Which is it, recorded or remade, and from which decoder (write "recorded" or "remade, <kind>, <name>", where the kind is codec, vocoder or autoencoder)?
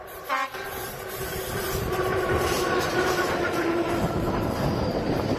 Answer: remade, vocoder, BigVGAN v2